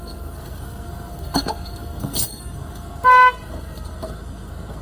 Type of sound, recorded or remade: remade